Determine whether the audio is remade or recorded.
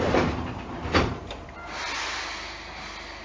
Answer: recorded